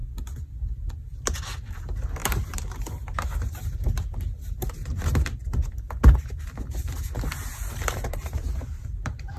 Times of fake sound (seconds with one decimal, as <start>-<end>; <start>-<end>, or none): 1.2-9.4